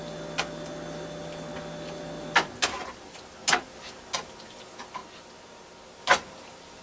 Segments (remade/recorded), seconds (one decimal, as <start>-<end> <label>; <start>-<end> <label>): 0.0-6.8 recorded